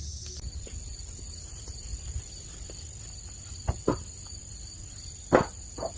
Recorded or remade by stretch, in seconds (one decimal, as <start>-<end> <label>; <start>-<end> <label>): 0.0-6.0 recorded